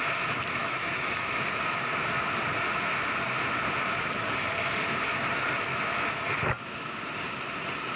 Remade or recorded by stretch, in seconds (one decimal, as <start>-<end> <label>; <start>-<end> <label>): 0.0-0.6 recorded; 0.6-1.4 remade; 1.4-5.7 recorded; 5.7-6.6 remade; 6.6-8.0 recorded